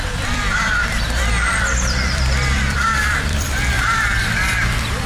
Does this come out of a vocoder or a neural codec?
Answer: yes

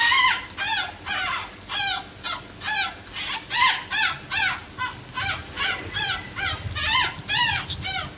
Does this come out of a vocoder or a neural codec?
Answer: no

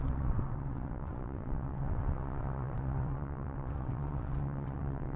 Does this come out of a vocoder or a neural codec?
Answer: yes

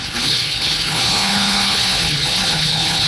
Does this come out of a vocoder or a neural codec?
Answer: yes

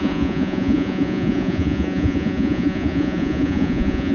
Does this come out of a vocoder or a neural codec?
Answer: yes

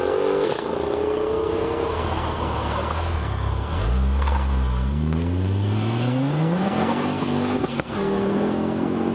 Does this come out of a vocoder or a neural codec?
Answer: yes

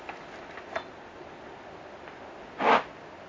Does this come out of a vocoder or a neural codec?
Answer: no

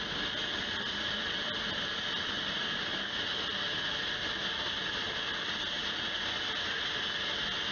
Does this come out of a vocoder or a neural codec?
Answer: no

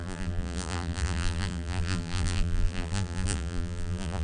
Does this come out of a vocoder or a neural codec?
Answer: yes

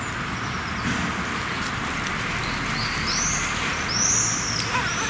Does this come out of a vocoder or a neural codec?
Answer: no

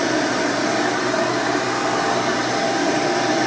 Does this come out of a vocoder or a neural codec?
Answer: no